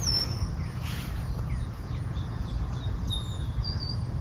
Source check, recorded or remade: remade